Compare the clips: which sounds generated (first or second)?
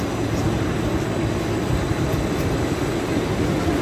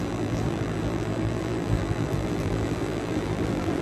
second